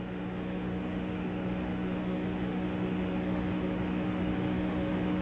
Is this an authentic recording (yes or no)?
no